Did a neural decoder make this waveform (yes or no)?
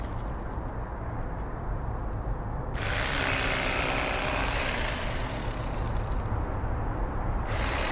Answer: no